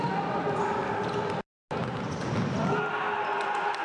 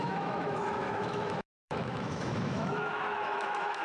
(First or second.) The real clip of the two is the first